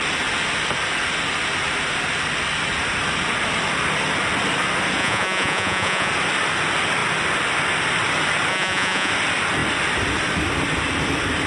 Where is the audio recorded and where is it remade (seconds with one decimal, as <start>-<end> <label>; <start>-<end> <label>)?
0.0-5.0 recorded; 5.0-6.1 remade; 6.1-8.5 recorded; 8.5-9.1 remade; 9.1-11.5 recorded